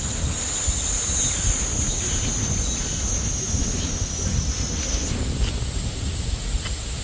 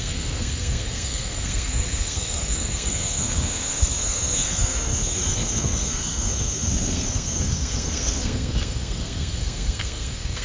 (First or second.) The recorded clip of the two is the first